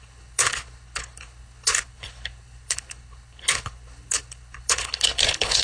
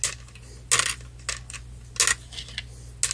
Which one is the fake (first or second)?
first